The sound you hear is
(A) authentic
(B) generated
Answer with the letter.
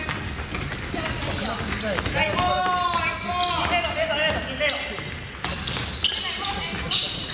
A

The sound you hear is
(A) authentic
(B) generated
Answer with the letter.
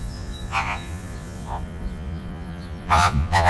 B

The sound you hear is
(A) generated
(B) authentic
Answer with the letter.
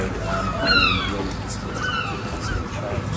B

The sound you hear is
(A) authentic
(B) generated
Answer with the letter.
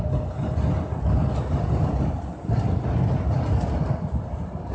A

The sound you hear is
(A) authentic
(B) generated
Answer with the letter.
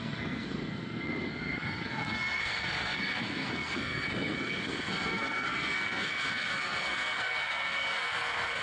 B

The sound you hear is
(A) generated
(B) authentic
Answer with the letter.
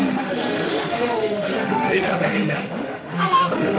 A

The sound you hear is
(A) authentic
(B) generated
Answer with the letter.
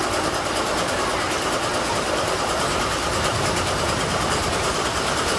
B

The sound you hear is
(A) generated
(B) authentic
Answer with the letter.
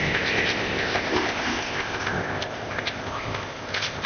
A